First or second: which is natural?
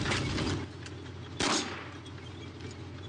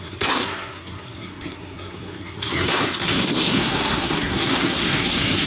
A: first